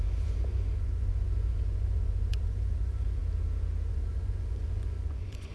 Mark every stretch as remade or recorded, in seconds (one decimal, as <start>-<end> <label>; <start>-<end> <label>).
0.0-3.2 remade; 3.2-3.9 recorded; 3.9-5.5 remade